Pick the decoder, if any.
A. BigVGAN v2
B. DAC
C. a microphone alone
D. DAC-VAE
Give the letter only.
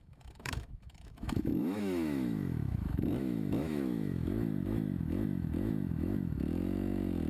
D